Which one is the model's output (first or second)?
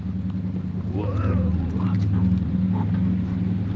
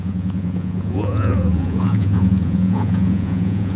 second